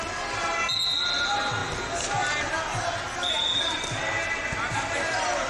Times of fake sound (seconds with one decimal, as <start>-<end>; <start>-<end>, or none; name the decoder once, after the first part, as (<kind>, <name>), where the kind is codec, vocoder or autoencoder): none